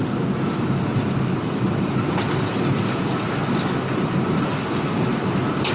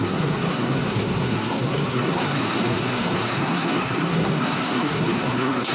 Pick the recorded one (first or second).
first